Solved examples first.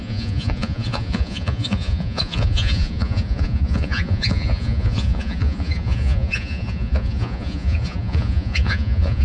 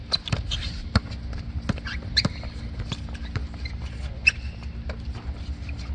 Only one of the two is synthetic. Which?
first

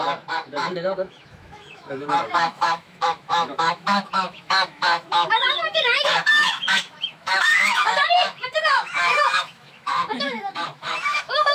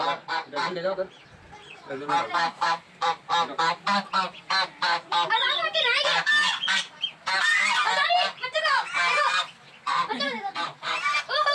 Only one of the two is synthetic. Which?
first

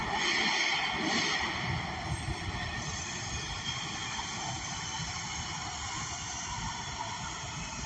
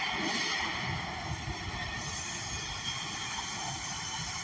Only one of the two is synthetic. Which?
first